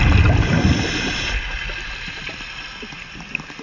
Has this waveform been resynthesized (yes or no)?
no